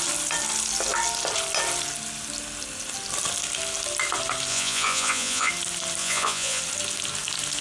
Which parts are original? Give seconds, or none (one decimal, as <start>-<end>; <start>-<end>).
0.0-4.5; 5.5-6.0; 6.6-7.6